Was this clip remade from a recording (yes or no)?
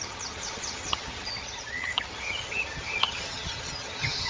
yes